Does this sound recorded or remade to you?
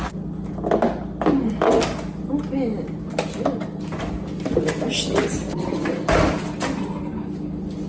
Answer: recorded